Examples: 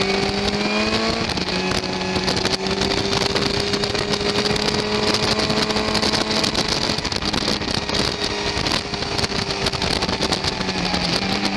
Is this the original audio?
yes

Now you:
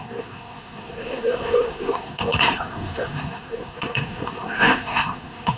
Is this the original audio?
no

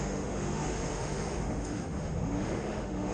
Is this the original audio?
no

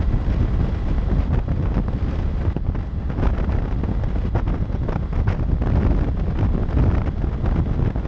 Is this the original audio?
yes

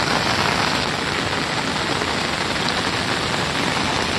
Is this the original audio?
yes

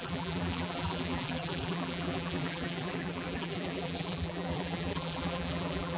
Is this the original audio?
no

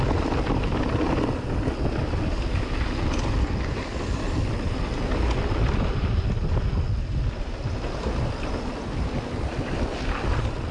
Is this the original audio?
yes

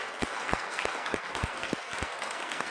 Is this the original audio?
no